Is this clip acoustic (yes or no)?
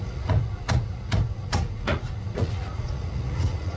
no